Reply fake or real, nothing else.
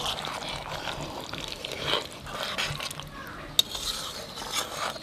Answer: real